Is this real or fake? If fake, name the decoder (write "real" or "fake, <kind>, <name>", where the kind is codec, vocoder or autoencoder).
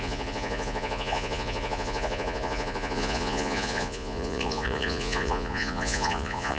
fake, vocoder, Vocos